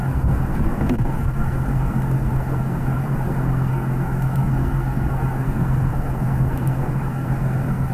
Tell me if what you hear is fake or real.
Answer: fake